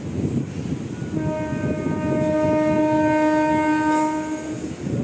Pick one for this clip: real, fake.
real